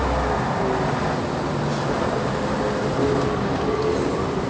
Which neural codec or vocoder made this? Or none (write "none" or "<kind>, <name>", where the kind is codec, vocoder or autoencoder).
none